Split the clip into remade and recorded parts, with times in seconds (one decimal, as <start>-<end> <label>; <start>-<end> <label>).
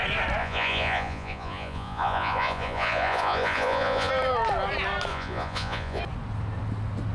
0.0-0.4 recorded; 0.4-4.1 remade; 4.1-5.1 recorded; 5.1-6.0 remade; 6.0-7.1 recorded